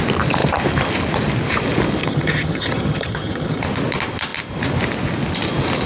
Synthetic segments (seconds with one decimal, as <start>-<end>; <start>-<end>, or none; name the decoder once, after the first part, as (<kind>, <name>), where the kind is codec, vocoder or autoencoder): 2.0-3.6 (vocoder, HiFi-GAN)